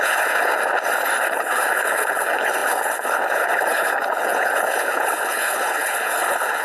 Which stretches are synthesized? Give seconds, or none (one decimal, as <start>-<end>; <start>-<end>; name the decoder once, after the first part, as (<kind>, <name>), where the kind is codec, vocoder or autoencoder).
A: 0.0-0.6 (codec, HILCodec); 1.2-6.6